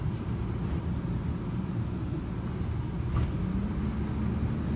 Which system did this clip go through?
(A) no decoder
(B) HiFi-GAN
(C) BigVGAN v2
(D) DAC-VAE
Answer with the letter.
A